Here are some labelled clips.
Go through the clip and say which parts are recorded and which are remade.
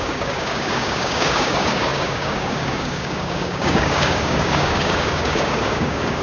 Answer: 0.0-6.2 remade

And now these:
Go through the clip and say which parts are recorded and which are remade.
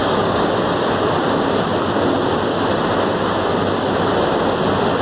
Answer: 0.0-0.5 remade; 0.5-5.0 recorded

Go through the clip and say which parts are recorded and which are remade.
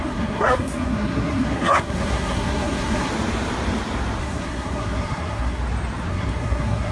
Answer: 0.0-3.1 remade; 3.1-4.2 recorded; 4.2-5.6 remade; 5.6-6.1 recorded; 6.1-6.9 remade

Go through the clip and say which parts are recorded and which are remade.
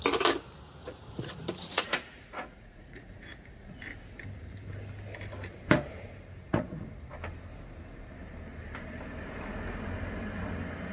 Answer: 0.0-0.8 recorded; 0.8-3.8 remade; 3.8-6.5 recorded; 6.5-7.1 remade; 7.1-10.9 recorded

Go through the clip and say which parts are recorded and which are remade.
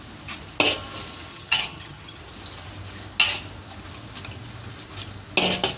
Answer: 0.0-1.3 recorded; 1.3-2.2 remade; 2.2-5.8 recorded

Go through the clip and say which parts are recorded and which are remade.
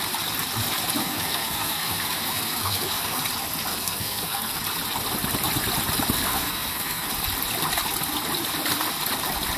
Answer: 0.0-1.0 recorded; 1.0-3.2 remade; 3.2-3.7 recorded; 3.7-4.6 remade; 4.6-6.3 recorded; 6.3-7.1 remade; 7.1-9.6 recorded